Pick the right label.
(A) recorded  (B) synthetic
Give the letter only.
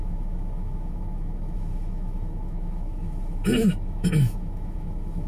B